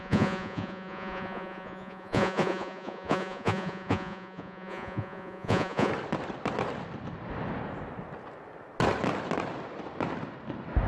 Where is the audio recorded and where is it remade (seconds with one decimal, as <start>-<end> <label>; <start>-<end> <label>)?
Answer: 0.0-5.9 remade; 5.9-10.9 recorded